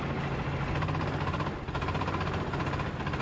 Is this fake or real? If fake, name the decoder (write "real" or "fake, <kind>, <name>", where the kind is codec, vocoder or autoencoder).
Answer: real